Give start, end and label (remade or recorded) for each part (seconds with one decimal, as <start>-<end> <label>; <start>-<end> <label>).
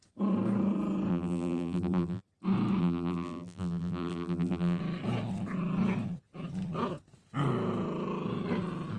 0.0-1.1 recorded; 1.1-2.2 remade; 2.2-2.8 recorded; 2.8-4.8 remade; 4.8-9.0 recorded